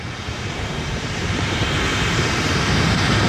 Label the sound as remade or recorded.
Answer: remade